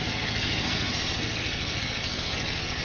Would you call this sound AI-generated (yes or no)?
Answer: yes